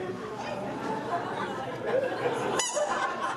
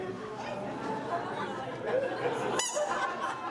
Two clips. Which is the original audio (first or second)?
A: second